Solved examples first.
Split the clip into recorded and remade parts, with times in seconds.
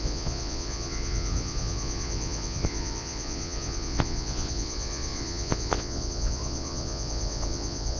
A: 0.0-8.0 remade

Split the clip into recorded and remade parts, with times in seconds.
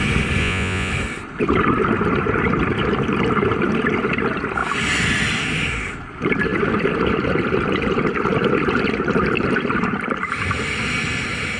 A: 0.0-0.4 recorded; 0.4-0.9 remade; 0.9-11.6 recorded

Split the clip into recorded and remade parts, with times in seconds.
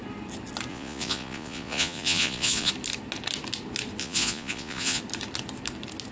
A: 0.0-0.7 recorded; 0.7-2.7 remade; 2.7-4.0 recorded; 4.0-5.0 remade; 5.0-6.1 recorded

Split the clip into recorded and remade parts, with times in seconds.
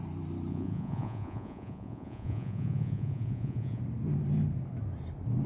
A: 0.0-0.5 recorded; 0.5-3.8 remade; 3.8-5.5 recorded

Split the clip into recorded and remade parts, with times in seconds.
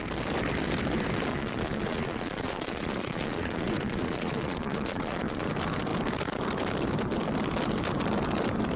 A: 0.0-1.3 recorded; 1.3-5.5 remade; 5.5-8.8 recorded